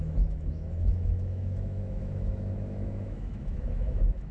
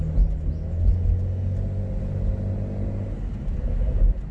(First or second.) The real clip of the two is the second